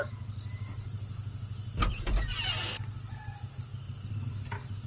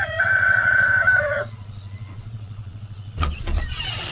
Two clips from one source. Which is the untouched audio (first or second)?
first